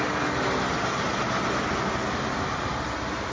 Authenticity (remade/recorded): recorded